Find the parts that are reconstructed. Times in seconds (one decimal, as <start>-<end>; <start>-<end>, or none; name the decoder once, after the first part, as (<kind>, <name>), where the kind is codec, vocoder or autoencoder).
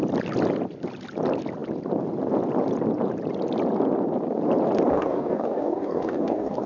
4.9-6.7 (codec, DAC)